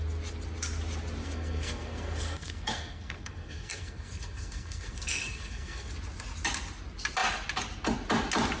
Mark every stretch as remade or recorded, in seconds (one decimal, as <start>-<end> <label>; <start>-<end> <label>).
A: 0.0-1.2 recorded; 1.2-5.9 remade; 5.9-8.6 recorded